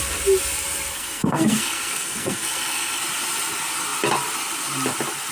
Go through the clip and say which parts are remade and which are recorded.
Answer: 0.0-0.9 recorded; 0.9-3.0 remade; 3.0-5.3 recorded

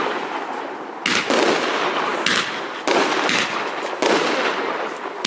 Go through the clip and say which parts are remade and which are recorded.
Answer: 0.0-5.3 recorded

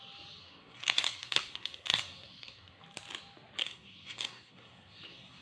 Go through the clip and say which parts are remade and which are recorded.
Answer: 0.0-0.4 recorded; 0.4-2.8 remade; 2.8-3.6 recorded; 3.6-5.4 remade

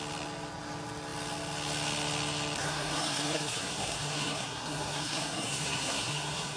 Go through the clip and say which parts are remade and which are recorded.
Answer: 0.0-2.6 recorded; 2.6-6.6 remade

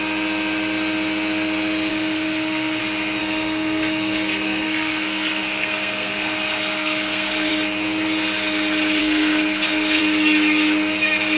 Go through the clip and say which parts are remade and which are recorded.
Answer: 0.0-1.9 recorded; 1.9-2.8 remade; 2.8-3.2 recorded; 3.2-7.5 remade; 7.5-9.0 recorded; 9.0-10.0 remade; 10.0-11.4 recorded

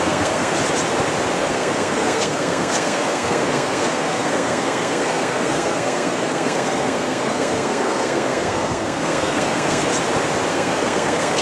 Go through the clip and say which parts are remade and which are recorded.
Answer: 0.0-0.5 remade; 0.5-1.4 recorded; 1.4-9.9 remade; 9.9-10.5 recorded; 10.5-11.4 remade

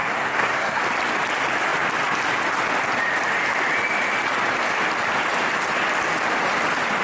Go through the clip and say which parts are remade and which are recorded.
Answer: 0.0-0.8 remade; 0.8-7.0 recorded